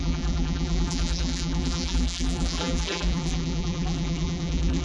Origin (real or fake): fake